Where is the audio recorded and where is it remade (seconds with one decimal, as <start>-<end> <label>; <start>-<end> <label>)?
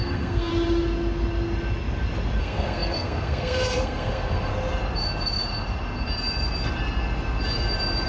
0.0-0.5 remade; 0.5-2.4 recorded; 2.4-4.5 remade; 4.5-8.1 recorded